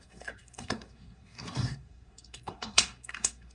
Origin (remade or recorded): remade